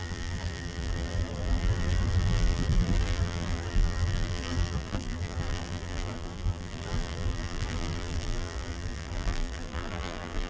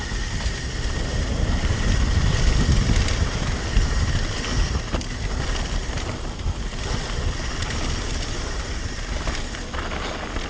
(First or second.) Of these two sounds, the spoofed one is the first